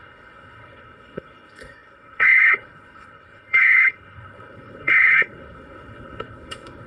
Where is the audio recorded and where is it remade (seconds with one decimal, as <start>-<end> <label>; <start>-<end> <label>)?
0.0-6.9 remade